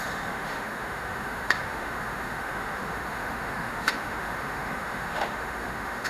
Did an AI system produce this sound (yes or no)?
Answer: yes